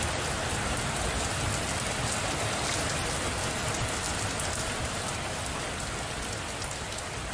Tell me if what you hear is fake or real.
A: real